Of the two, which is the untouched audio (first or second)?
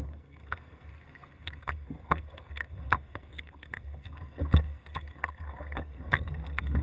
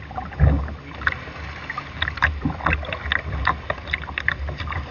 second